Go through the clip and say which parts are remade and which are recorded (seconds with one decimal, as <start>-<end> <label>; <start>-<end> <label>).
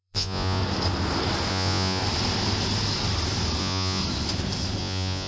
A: 0.0-0.6 remade; 0.6-1.5 recorded; 1.5-2.0 remade; 2.0-3.6 recorded; 3.6-4.0 remade; 4.0-4.8 recorded; 4.8-5.3 remade